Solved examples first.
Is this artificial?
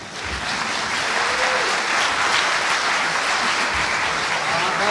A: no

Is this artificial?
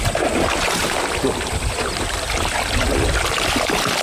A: no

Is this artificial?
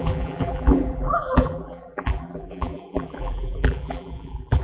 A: yes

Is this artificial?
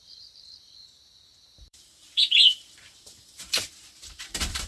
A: yes